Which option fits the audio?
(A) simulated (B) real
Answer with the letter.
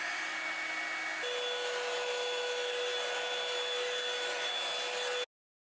B